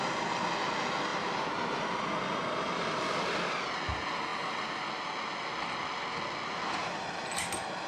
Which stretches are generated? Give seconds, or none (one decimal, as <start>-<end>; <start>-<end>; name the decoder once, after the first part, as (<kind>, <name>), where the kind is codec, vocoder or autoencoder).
1.1-3.2 (vocoder, BigVGAN v2); 4.3-4.9; 6.8-7.9